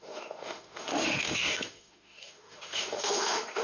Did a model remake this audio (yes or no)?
yes